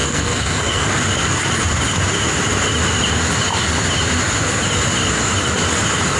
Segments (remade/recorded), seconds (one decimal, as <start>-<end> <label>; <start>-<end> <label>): 0.0-0.9 remade; 0.9-6.2 recorded